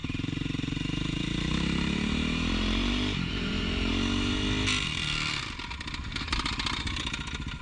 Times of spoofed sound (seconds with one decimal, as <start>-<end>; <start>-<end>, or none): 0.0-3.9